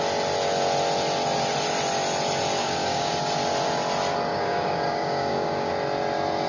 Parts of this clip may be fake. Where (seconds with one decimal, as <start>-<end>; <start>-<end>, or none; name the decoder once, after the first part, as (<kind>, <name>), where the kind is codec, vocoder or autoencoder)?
2.6-3.1 (codec, DAC); 4.3-5.7